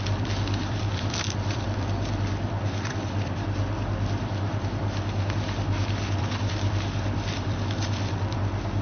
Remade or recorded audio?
remade